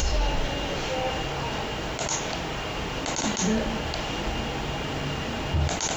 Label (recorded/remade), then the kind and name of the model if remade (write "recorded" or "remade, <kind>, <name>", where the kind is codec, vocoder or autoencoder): recorded